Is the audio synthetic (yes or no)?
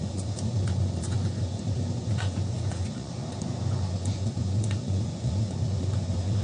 yes